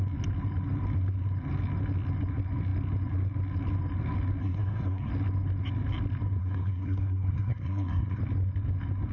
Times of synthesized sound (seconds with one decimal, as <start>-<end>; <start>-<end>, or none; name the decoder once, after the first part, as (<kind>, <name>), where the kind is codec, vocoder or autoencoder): 4.4-5.1 (codec, SNAC); 6.4-8.2